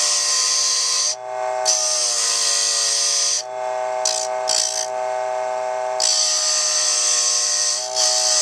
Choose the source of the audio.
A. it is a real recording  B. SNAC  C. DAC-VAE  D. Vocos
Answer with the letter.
A